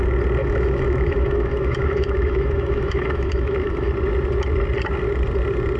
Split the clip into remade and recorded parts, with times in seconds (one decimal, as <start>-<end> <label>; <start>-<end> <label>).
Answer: 0.0-0.4 recorded; 0.4-3.9 remade; 3.9-5.8 recorded